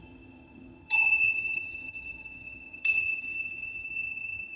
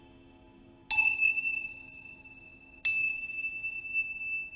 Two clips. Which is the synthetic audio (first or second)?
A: first